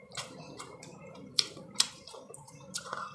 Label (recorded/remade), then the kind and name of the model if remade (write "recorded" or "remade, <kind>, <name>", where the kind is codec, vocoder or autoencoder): remade, vocoder, BigVGAN v2